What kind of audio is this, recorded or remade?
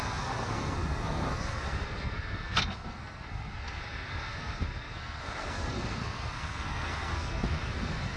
remade